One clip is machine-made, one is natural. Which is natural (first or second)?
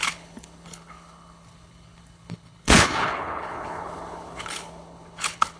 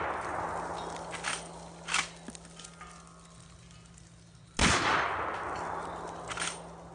second